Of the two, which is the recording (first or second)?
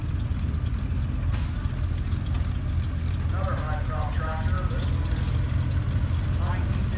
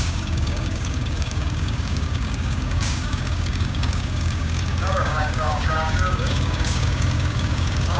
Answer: first